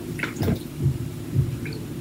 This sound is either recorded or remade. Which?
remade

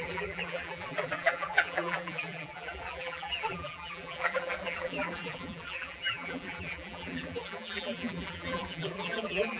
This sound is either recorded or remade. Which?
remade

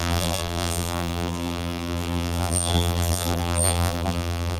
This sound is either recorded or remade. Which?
remade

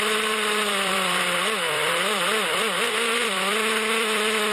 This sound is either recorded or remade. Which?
remade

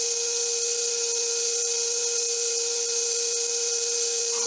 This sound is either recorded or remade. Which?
recorded